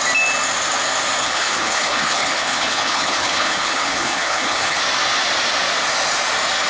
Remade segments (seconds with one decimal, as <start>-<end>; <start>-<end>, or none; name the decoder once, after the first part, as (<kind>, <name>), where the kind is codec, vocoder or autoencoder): 1.2-4.8 (codec, HILCodec)